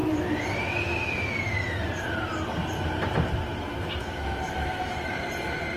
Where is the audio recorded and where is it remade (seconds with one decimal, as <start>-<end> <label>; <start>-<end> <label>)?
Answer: 0.0-4.0 recorded; 4.0-5.1 remade; 5.1-5.8 recorded